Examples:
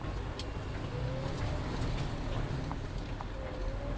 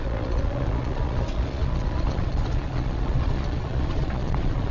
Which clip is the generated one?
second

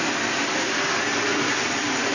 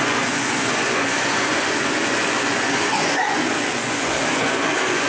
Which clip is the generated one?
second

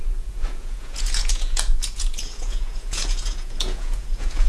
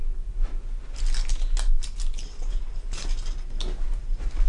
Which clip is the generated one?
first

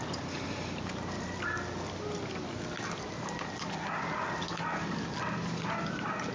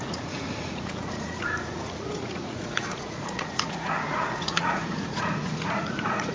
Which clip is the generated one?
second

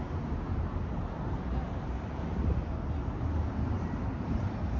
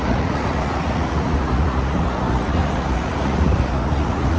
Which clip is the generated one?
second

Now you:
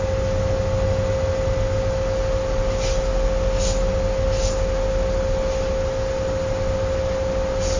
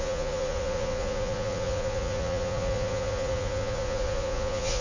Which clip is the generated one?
second